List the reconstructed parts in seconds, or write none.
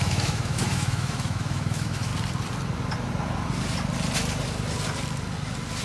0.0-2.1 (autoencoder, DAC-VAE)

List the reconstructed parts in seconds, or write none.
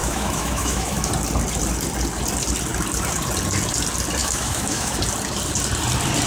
0.0-1.1 (autoencoder, DAC-VAE); 4.2-5.0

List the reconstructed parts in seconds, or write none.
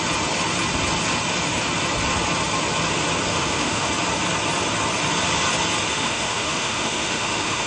3.3-3.9 (autoencoder, DAC-VAE); 5.9-7.7